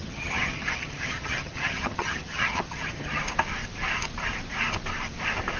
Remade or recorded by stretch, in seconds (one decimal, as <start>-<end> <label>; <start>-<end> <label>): 0.0-3.2 remade; 3.2-5.6 recorded